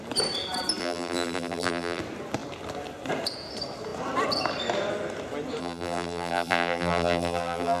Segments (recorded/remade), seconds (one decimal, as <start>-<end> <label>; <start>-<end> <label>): 0.0-0.8 recorded; 0.8-2.0 remade; 2.0-5.6 recorded; 5.6-7.8 remade